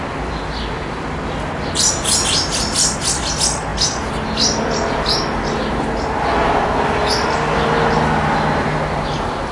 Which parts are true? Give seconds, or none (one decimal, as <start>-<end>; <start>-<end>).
0.0-9.5